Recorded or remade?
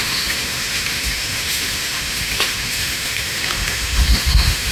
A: remade